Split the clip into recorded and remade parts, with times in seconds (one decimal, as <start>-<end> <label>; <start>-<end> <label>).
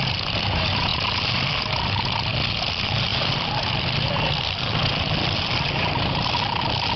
0.0-7.0 recorded